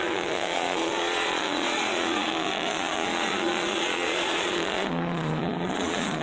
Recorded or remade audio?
remade